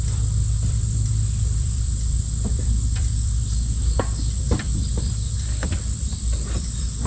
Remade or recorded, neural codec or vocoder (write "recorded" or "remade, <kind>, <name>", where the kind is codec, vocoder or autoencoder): remade, vocoder, BigVGAN v2